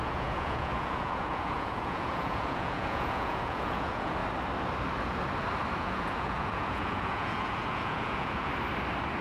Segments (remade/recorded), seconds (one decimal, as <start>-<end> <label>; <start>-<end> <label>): 0.0-4.2 remade; 4.2-5.8 recorded; 5.8-8.5 remade; 8.5-9.2 recorded